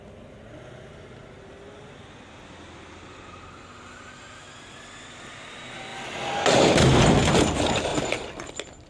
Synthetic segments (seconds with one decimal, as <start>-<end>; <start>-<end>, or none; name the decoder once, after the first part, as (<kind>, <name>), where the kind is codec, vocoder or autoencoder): none